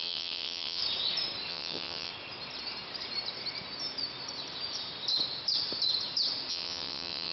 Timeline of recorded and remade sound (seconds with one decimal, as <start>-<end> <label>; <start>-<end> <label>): 0.0-0.8 remade; 0.8-1.5 recorded; 1.5-2.1 remade; 2.1-6.5 recorded; 6.5-7.3 remade